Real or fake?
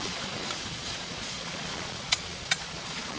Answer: fake